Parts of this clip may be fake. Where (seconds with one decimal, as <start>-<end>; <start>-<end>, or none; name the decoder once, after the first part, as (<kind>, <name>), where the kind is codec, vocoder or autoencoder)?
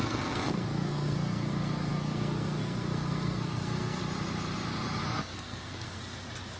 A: 0.0-4.0 (codec, SNAC); 5.0-6.0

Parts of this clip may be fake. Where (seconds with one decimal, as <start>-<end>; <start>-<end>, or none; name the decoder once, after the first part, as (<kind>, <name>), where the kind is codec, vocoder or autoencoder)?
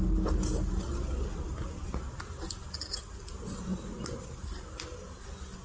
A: none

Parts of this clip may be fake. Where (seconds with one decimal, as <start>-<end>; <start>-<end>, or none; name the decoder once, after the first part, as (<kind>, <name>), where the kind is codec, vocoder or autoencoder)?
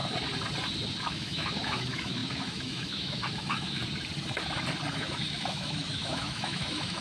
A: 1.0-3.8 (autoencoder, DAC-VAE); 4.9-7.0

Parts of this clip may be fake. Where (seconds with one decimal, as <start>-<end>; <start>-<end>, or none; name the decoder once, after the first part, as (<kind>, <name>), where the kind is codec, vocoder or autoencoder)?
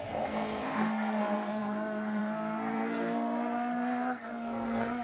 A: 0.0-5.0 (codec, SNAC)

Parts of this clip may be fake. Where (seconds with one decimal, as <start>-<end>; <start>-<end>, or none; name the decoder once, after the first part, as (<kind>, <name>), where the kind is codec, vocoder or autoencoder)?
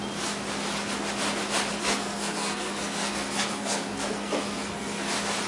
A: 1.8-5.0 (codec, SNAC)